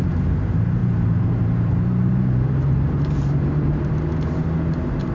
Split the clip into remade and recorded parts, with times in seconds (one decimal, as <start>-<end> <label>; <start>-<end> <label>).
0.0-0.8 recorded; 0.8-3.9 remade; 3.9-5.1 recorded